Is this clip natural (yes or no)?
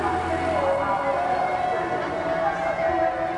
yes